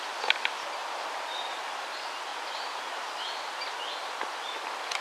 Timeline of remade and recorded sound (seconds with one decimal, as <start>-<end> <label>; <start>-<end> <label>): 0.0-0.8 recorded; 0.8-1.8 remade; 1.8-2.3 recorded; 2.3-2.9 remade; 2.9-5.0 recorded